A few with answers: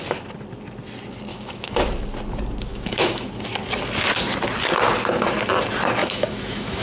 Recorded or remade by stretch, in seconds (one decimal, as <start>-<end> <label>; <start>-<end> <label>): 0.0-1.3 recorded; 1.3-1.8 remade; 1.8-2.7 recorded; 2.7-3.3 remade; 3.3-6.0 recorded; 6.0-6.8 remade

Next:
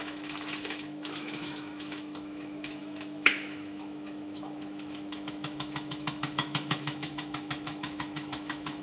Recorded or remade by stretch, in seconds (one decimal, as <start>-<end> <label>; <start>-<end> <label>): 0.0-8.8 remade

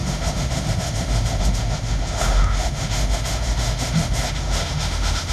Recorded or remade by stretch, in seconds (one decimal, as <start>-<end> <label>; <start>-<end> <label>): 0.0-5.3 remade

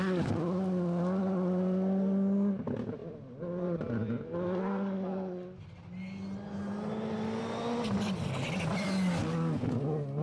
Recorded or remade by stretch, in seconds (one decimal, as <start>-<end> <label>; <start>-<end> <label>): 0.0-10.2 recorded